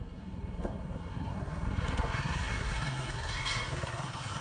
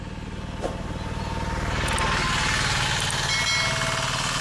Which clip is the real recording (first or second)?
second